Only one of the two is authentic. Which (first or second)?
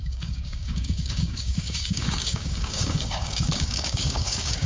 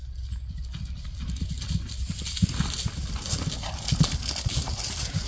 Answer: second